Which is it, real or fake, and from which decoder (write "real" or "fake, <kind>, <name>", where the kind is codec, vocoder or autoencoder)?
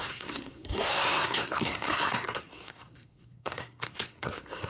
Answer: fake, codec, SNAC